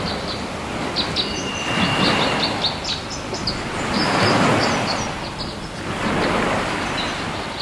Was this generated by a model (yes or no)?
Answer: no